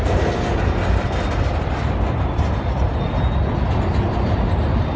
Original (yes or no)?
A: yes